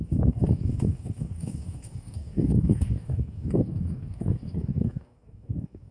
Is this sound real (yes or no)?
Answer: no